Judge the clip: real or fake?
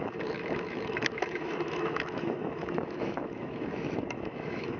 fake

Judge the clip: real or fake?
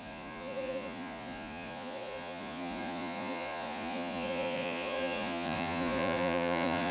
fake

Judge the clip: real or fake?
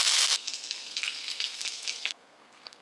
fake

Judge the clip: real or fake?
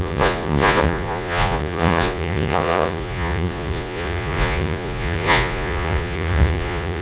fake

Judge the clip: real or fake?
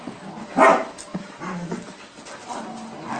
real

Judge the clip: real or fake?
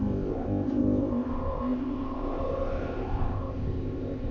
fake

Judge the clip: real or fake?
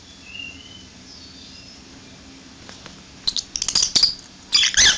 real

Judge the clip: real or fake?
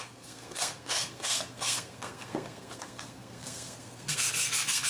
fake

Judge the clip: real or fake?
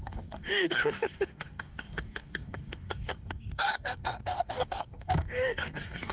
fake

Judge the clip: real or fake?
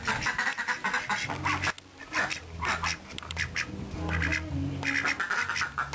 real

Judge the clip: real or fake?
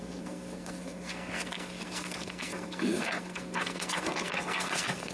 fake